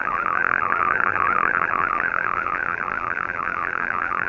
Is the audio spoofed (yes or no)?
yes